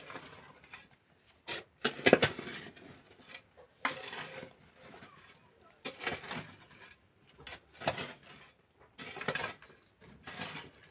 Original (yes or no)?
yes